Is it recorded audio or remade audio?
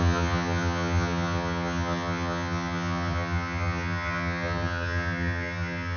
remade